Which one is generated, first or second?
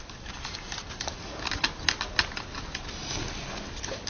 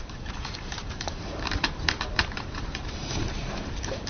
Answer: second